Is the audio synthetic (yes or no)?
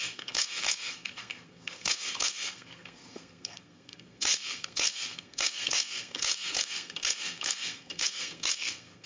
yes